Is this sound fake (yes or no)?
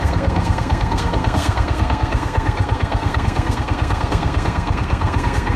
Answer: yes